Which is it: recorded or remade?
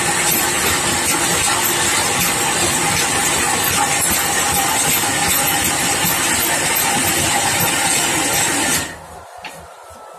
recorded